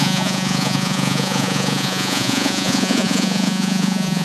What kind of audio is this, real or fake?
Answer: fake